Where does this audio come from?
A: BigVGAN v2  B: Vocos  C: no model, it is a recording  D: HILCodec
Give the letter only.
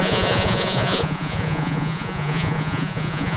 B